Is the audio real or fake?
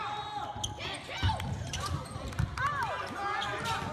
real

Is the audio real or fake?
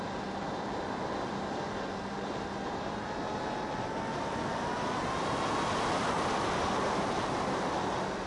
real